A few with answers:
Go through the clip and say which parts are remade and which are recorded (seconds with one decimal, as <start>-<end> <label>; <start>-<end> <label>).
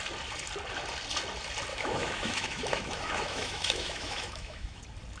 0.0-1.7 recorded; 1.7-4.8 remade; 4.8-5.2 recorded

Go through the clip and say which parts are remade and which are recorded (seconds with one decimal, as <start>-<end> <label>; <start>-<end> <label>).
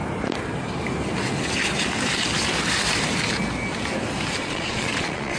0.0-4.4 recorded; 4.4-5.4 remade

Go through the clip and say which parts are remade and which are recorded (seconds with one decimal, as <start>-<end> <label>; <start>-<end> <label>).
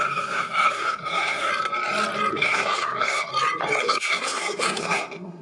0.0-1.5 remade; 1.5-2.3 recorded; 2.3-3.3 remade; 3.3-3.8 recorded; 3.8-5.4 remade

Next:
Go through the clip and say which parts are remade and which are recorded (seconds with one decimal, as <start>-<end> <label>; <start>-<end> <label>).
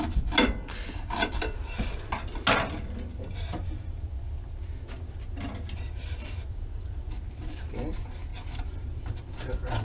0.0-9.8 recorded